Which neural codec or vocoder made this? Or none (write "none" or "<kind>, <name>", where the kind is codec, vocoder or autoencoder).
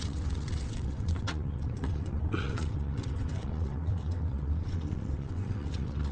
vocoder, WaveNeXt